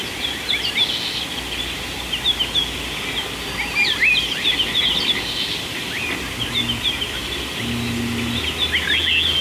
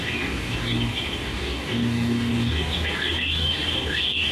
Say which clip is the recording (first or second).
first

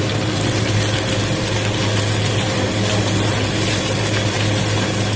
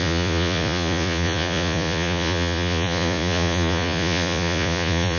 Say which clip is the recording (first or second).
first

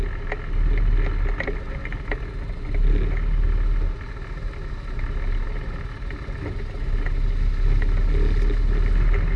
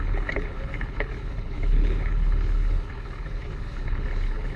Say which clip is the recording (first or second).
first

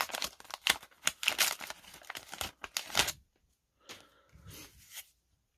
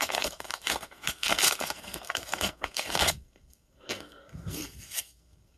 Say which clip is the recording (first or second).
first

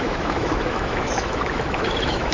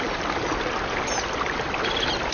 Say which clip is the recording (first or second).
second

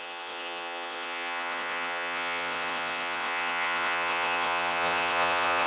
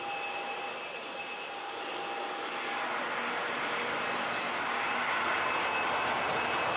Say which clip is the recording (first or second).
second